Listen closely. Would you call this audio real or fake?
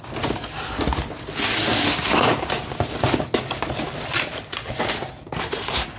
real